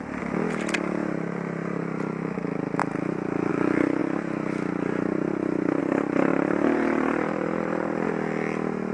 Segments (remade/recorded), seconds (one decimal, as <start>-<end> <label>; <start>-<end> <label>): 0.0-6.3 recorded; 6.3-8.1 remade; 8.1-8.9 recorded